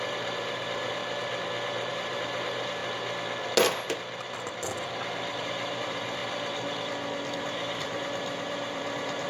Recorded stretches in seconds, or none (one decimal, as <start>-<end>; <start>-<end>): 1.0-1.9; 2.8-5.4; 6.2-7.4

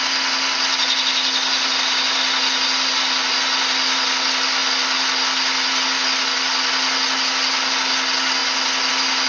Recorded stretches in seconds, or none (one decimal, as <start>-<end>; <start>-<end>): 0.0-9.3

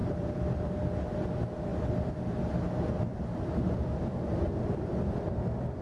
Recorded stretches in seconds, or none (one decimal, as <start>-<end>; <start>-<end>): 0.7-3.1; 3.6-5.8

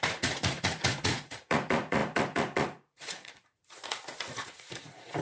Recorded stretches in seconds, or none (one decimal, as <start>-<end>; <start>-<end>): none

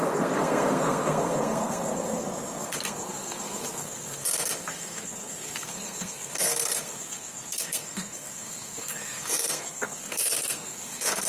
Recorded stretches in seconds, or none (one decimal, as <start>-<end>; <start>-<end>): none

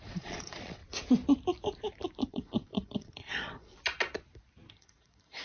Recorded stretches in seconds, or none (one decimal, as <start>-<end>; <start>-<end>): 0.8-2.3; 3.7-4.7

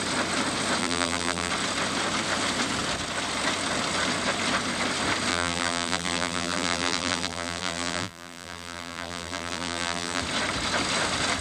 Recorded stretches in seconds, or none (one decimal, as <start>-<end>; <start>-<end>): 0.0-0.8; 1.5-5.3; 10.2-11.4

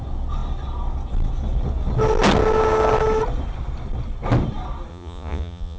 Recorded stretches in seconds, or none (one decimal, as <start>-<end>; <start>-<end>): 0.0-4.9